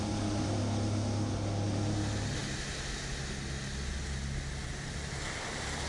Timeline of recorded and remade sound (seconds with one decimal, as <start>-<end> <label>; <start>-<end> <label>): 0.0-5.9 recorded